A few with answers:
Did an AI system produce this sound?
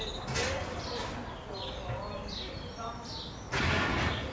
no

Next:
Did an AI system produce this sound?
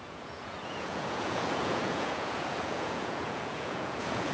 yes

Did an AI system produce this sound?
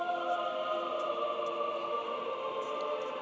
no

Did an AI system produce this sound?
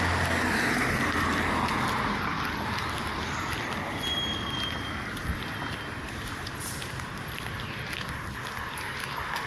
no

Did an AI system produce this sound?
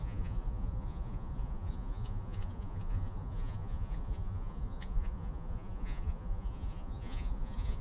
yes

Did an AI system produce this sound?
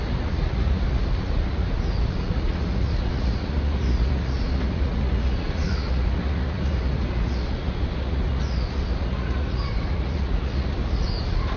yes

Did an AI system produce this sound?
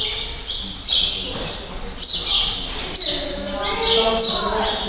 no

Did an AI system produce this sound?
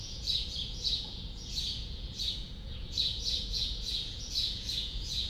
yes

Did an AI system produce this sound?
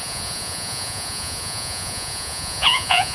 yes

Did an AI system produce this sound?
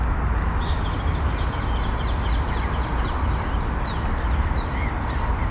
no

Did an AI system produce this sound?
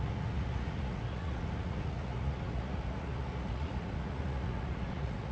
yes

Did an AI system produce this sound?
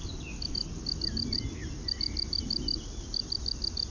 no